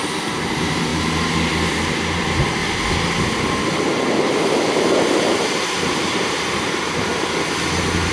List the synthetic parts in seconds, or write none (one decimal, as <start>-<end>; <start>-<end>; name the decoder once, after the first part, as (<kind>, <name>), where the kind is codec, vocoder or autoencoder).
0.0-2.6 (vocoder, BigVGAN v2); 3.2-7.1